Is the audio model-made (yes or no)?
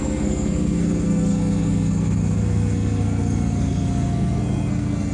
yes